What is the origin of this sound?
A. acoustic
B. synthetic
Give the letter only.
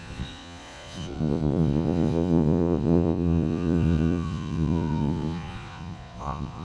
B